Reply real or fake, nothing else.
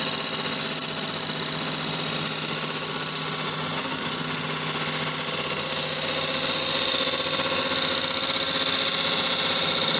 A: real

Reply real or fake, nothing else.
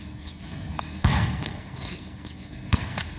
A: fake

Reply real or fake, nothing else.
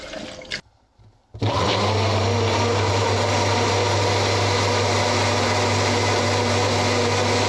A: real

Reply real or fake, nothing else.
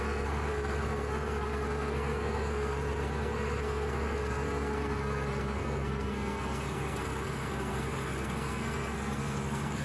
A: fake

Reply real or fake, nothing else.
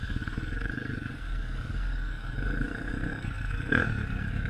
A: fake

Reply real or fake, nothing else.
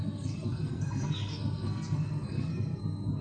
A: fake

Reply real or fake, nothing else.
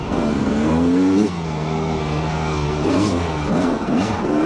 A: fake